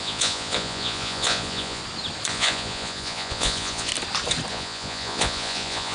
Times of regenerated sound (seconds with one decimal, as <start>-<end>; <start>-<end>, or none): 0.0-1.8; 2.3-3.9; 4.5-5.9